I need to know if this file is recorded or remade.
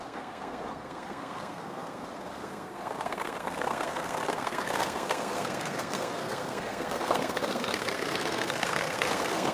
remade